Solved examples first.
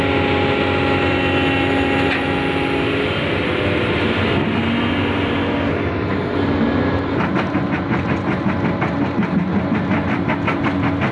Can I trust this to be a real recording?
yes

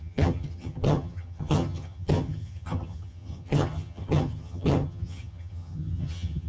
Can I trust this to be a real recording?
no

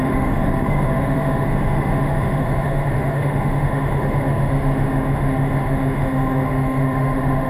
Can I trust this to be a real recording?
no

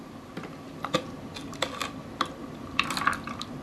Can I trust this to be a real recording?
yes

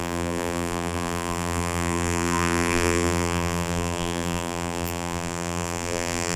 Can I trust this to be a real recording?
no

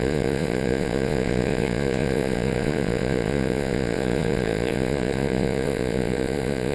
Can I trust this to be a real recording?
no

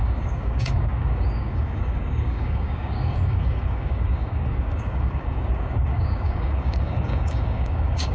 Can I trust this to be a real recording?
no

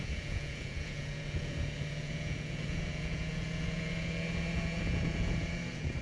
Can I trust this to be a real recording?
no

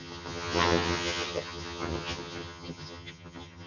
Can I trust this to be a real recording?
no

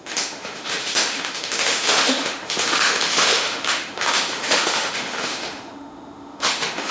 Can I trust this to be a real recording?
no